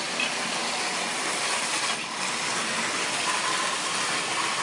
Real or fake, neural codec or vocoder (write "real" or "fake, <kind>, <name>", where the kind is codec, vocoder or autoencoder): real